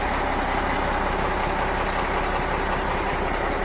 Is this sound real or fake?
real